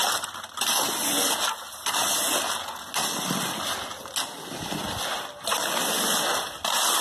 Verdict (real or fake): real